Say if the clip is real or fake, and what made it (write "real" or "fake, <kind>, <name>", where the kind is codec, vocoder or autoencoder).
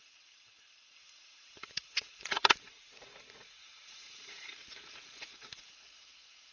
fake, vocoder, Vocos